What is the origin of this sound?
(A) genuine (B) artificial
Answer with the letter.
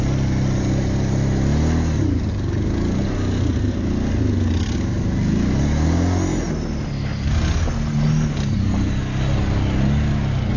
A